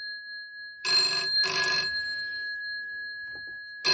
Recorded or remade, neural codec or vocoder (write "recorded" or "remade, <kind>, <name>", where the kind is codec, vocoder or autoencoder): recorded